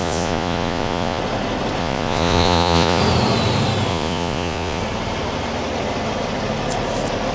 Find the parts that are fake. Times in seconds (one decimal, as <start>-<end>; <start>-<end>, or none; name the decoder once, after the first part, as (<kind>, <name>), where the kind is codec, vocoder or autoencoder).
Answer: 0.0-1.2 (vocoder, Vocos); 1.8-3.0; 3.9-4.8